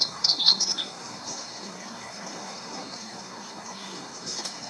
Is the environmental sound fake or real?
fake